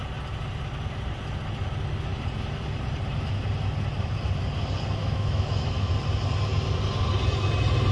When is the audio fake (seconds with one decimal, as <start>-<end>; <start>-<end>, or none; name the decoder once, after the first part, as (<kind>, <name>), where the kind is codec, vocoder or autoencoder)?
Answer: 5.0-5.9 (autoencoder, DAC-VAE)